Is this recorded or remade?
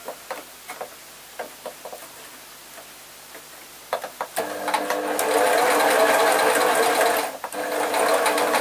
recorded